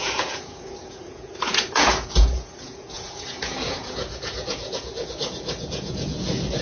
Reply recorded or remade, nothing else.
remade